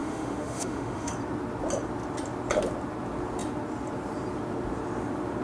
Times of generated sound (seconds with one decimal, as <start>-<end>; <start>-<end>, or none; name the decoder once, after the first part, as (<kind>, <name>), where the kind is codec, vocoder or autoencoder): 0.0-1.1 (autoencoder, DAC-VAE)